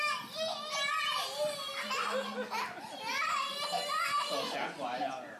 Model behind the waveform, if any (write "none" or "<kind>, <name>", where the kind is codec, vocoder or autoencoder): none